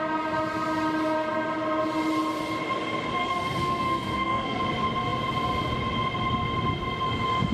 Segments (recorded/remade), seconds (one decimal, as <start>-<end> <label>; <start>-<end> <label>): 0.0-3.2 recorded; 3.2-4.6 remade; 4.6-7.5 recorded